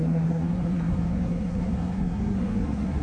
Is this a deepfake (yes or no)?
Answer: yes